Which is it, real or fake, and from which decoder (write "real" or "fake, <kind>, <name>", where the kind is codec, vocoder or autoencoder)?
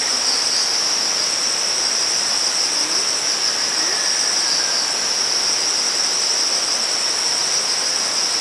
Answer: real